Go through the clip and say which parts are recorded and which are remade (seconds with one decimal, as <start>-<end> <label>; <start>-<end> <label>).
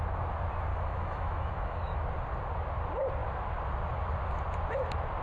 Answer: 0.0-0.7 recorded; 0.7-2.0 remade; 2.0-5.2 recorded